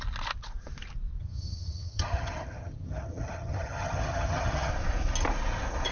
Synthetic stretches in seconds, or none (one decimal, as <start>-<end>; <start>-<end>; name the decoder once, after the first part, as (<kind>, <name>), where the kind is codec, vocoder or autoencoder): 1.2-4.7 (vocoder, HiFi-GAN)

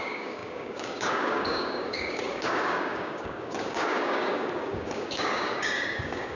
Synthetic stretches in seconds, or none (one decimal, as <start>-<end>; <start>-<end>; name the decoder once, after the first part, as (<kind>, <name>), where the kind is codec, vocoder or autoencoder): 0.0-6.4 (codec, DAC)

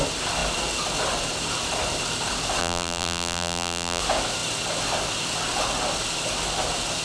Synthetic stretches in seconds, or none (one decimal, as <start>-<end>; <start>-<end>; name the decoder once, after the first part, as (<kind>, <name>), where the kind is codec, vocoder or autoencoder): 2.6-4.0 (vocoder, BigVGAN v2)

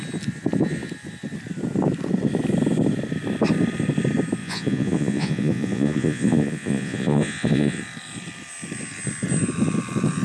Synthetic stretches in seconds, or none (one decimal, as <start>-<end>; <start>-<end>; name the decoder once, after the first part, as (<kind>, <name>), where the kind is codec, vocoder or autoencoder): 4.4-7.8 (vocoder, Vocos)

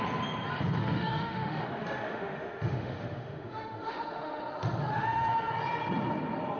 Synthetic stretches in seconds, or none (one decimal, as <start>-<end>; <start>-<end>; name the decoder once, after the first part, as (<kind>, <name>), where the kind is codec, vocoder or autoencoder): 0.8-4.4 (autoencoder, DAC-VAE); 4.9-5.5